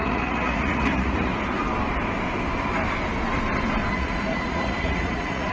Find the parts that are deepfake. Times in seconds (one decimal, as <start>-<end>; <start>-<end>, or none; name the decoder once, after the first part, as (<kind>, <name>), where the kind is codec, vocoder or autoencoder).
0.0-1.3 (vocoder, Vocos); 3.9-5.5